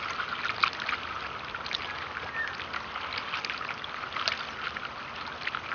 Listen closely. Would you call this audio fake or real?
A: real